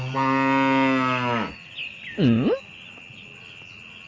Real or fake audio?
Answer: real